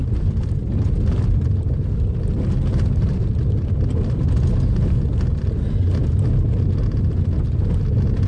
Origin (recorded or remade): recorded